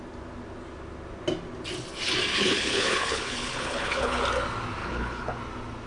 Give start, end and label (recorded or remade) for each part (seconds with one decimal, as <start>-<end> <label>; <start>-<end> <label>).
0.0-2.3 recorded; 2.3-4.2 remade; 4.2-4.8 recorded; 4.8-5.4 remade; 5.4-5.9 recorded